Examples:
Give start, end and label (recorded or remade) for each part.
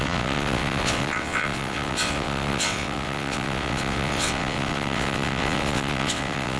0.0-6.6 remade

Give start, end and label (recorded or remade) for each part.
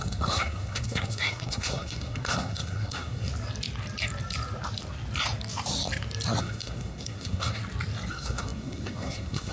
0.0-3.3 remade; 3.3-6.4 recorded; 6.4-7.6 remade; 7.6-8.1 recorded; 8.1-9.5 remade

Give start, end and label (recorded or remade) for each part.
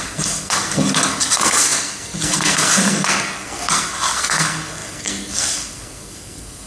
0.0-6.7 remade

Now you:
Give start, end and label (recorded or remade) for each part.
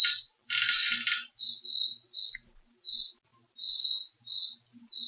0.0-5.1 recorded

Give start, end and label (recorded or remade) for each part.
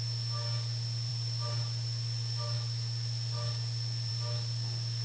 0.0-5.0 recorded